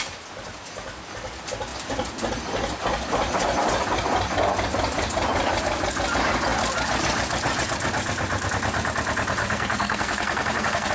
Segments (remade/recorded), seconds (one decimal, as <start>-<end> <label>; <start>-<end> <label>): 0.0-9.4 recorded; 9.4-10.9 remade